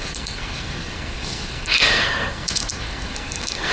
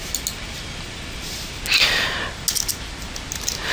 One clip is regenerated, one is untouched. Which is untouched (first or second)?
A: second